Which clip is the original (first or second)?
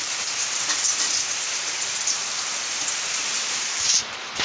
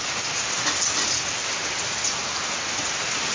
second